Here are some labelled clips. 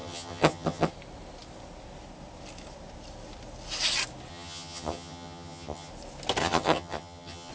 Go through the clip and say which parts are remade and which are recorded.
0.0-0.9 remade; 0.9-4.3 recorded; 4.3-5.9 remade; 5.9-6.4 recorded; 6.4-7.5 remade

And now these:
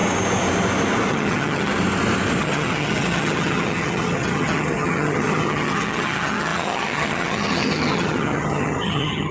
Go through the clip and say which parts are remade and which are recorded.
0.0-1.1 recorded; 1.1-1.7 remade; 1.7-2.4 recorded; 2.4-9.3 remade

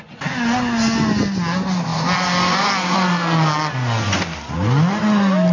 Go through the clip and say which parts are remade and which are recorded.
0.0-5.5 recorded

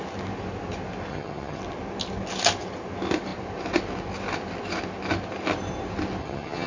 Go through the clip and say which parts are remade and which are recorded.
0.0-1.1 recorded; 1.1-1.6 remade; 1.6-6.2 recorded; 6.2-6.7 remade